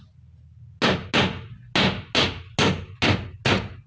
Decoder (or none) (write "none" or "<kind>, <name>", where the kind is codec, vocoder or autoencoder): none